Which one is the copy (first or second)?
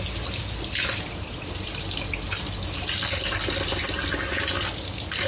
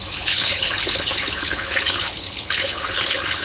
second